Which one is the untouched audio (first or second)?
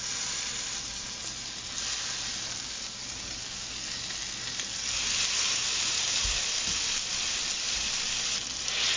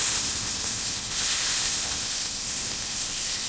first